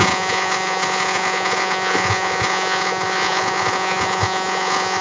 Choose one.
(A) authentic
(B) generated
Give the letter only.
B